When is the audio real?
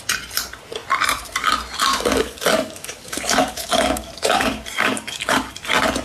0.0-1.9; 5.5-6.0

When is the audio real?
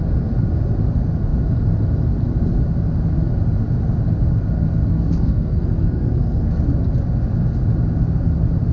0.0-4.9; 6.6-8.7